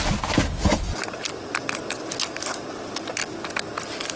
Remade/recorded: recorded